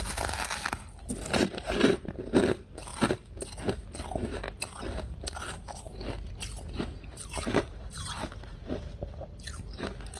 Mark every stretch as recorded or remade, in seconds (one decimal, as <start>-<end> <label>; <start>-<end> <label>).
0.0-1.9 recorded; 1.9-2.4 remade; 2.4-7.1 recorded; 7.1-9.0 remade; 9.0-10.2 recorded